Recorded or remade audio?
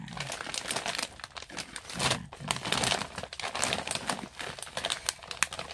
recorded